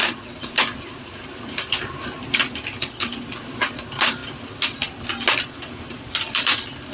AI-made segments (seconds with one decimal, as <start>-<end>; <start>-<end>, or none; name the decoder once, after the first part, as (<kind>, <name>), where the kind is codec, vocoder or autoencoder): 0.0-0.4 (vocoder, BigVGAN v2); 2.4-4.2; 5.3-6.9